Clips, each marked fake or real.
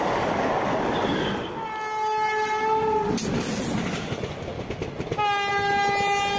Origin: real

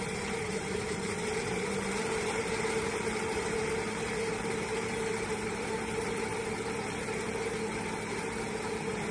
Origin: fake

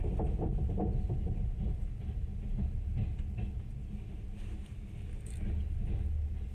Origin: real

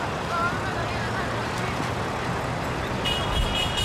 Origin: real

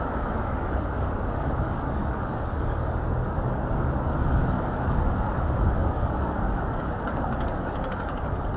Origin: fake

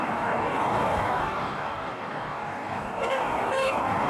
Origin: fake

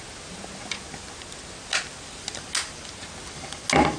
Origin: real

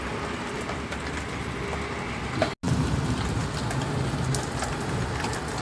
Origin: real